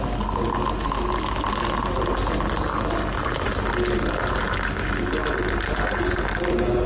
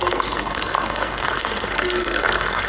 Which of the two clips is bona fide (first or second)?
first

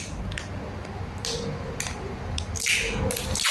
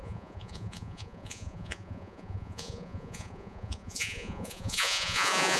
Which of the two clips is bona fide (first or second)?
first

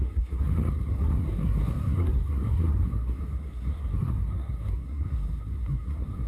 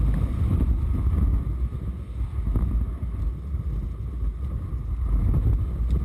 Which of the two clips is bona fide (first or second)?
second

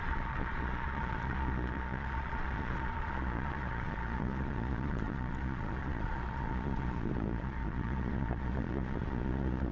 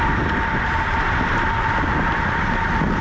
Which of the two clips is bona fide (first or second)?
second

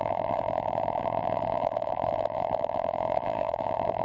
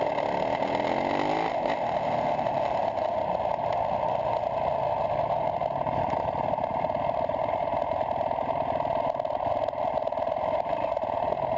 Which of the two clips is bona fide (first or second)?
second